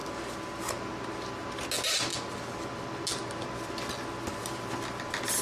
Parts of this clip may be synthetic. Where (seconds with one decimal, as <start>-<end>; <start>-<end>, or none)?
none